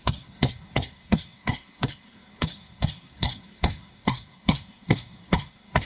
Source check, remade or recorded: remade